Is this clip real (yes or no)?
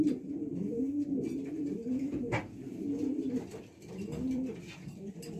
no